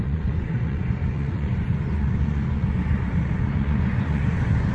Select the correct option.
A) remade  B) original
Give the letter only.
A